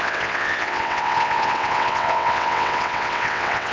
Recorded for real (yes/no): no